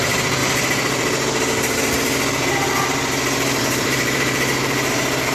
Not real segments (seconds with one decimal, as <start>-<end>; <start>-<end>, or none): 0.0-0.4; 3.6-5.3